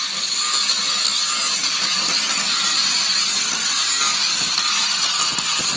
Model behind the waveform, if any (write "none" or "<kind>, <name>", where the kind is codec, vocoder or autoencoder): none